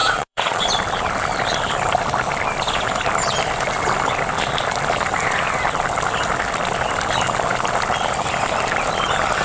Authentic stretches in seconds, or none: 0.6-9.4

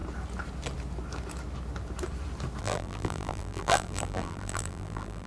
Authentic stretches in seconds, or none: 0.0-2.6

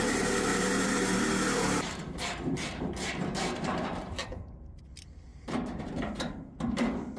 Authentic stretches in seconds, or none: 0.0-0.5; 4.8-5.3; 6.1-7.2

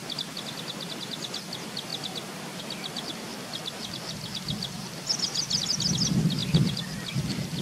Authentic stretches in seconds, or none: 0.0-7.6

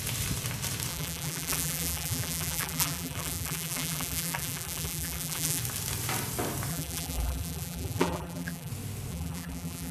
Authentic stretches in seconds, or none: 0.0-0.9; 5.6-6.7; 8.7-9.1

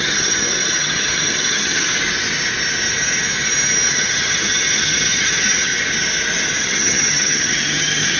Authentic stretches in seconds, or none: 1.9-3.9; 5.7-6.6